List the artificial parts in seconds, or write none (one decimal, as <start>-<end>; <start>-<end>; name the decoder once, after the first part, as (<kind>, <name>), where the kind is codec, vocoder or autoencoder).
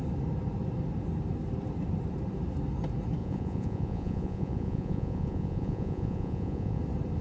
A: 3.2-6.8 (vocoder, Vocos)